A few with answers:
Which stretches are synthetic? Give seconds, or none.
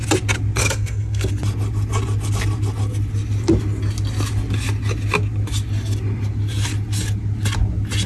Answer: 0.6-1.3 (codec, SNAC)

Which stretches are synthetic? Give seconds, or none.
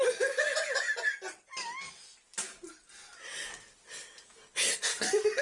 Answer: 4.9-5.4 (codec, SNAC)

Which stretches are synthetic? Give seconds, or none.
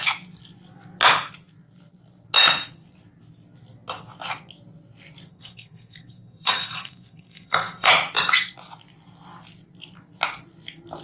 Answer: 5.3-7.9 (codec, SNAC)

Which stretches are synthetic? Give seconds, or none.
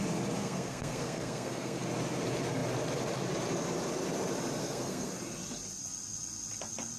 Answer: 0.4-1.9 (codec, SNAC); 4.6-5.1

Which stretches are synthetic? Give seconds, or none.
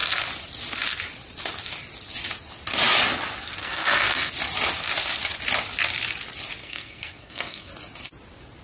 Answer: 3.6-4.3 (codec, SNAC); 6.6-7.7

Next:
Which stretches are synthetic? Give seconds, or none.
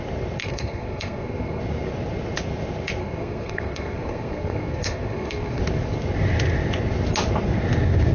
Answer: 0.4-1.6 (codec, SNAC); 3.0-5.6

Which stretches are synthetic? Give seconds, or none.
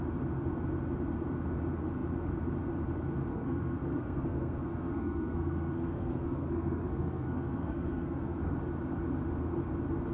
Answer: 3.3-8.5 (codec, SNAC)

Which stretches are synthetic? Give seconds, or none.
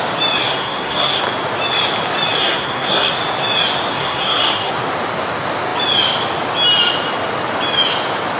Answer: 0.5-1.2 (codec, SNAC); 2.4-3.1; 3.9-4.7